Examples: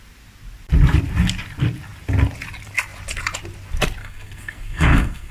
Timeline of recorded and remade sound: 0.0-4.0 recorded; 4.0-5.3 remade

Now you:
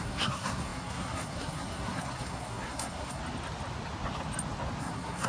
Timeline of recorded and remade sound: 0.0-3.2 remade; 3.2-4.8 recorded; 4.8-5.3 remade